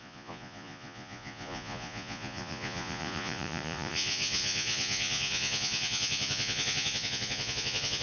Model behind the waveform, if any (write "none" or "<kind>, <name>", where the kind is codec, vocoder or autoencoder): vocoder, Vocos